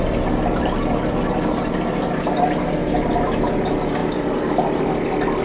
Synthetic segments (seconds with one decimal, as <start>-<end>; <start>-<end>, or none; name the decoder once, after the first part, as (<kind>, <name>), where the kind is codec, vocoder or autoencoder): none

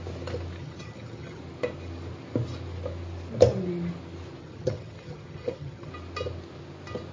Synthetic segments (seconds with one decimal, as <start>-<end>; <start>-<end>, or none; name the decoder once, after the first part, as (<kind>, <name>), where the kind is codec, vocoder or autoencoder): 0.6-1.4 (vocoder, HiFi-GAN); 4.4-5.9

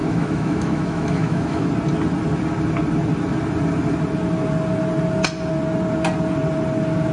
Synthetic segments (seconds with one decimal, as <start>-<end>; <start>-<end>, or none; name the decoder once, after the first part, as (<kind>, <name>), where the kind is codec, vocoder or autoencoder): 0.0-1.7 (autoencoder, DAC-VAE)

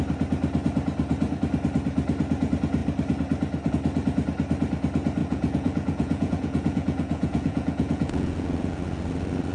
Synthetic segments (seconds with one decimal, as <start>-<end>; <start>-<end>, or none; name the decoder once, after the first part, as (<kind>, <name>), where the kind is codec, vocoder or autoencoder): 5.2-8.8 (vocoder, Vocos)

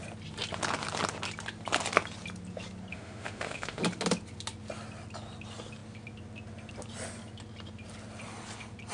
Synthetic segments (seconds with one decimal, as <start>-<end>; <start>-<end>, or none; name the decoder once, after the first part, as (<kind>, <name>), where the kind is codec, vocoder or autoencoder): 2.9-3.8 (autoencoder, DAC-VAE)

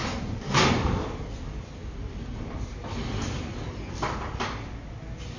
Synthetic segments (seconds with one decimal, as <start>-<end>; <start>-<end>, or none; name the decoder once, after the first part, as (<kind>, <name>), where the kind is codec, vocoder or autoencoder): 0.0-0.7 (vocoder, BigVGAN v2)

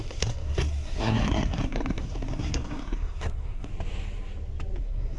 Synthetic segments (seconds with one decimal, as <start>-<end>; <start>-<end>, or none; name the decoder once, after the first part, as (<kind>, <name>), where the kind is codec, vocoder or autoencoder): 0.0-3.7 (codec, SNAC); 4.8-5.2

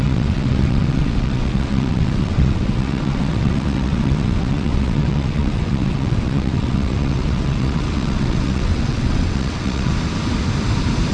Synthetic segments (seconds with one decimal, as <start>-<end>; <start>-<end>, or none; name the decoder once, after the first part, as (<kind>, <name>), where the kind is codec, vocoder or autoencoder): 0.0-9.9 (vocoder, WaveNeXt)